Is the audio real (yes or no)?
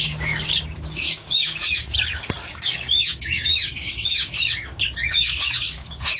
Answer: no